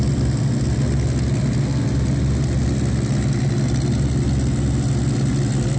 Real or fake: real